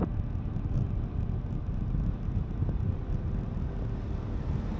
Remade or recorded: recorded